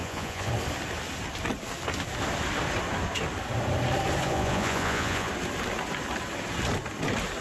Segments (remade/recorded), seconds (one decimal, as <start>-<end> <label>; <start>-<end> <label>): 0.0-0.5 remade; 0.5-4.2 recorded; 4.2-5.3 remade; 5.3-7.4 recorded